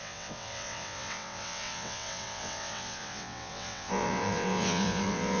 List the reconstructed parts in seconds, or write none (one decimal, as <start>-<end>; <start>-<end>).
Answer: 0.0-5.4